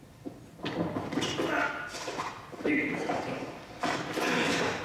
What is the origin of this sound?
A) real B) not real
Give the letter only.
A